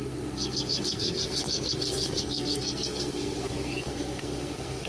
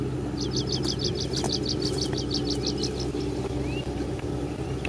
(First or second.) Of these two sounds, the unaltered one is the second